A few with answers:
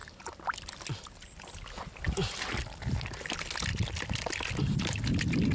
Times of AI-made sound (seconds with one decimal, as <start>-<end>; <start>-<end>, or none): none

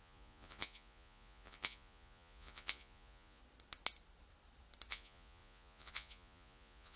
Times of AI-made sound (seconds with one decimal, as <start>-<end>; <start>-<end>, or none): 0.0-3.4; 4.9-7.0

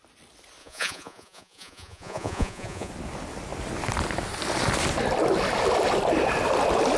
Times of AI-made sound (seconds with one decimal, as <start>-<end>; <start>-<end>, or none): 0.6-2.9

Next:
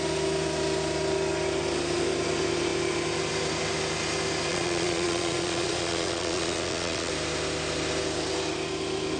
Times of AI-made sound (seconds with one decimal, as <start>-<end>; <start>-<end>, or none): 4.5-7.1